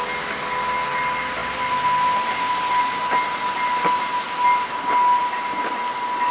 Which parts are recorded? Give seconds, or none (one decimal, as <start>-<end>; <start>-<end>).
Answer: 0.0-6.3